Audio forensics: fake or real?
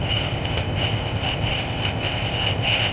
fake